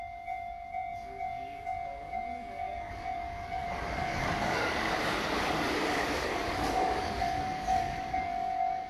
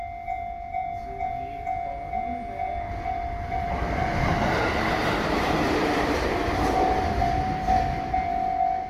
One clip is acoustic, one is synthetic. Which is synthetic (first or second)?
first